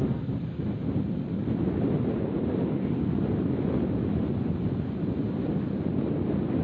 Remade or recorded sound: recorded